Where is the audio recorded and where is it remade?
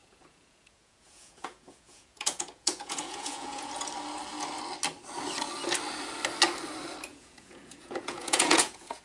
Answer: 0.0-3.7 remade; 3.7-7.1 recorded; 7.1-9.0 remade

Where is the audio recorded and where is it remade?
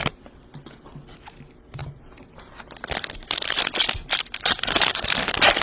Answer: 0.0-5.6 recorded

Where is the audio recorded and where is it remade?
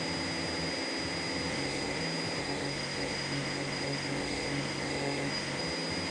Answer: 0.0-1.5 recorded; 1.5-2.0 remade; 2.0-2.4 recorded; 2.4-5.6 remade; 5.6-6.1 recorded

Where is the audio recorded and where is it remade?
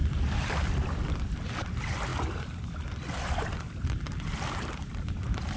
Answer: 0.0-5.6 recorded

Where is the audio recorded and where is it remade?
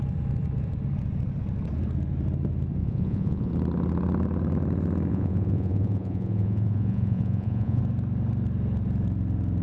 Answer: 0.0-2.8 recorded; 2.8-3.5 remade; 3.5-5.1 recorded; 5.1-7.8 remade; 7.8-9.6 recorded